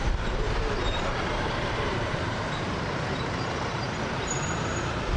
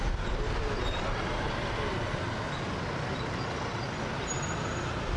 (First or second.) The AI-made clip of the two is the first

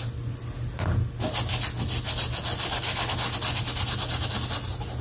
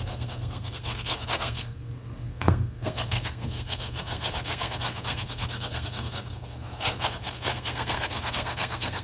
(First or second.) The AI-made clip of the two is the second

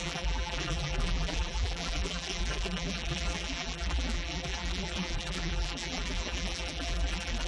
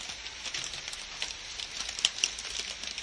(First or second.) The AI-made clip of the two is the first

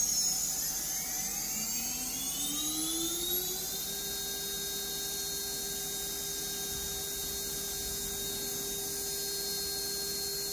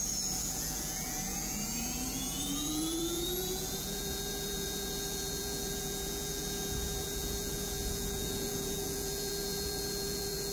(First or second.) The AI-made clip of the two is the second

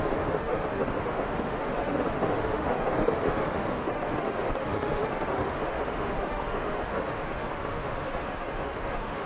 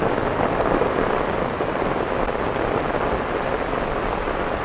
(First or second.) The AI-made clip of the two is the first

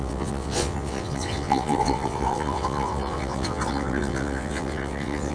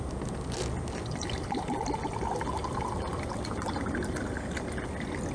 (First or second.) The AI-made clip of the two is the first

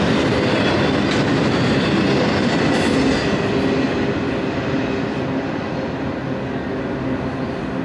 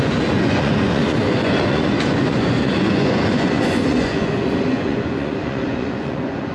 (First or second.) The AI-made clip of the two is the second